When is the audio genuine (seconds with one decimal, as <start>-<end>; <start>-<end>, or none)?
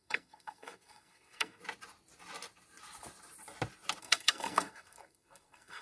1.6-4.0